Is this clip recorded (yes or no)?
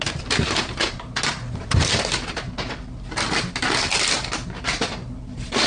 yes